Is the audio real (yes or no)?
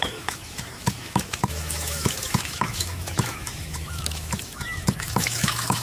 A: no